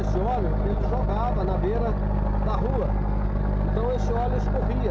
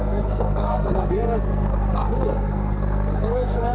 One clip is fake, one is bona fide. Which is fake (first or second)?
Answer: second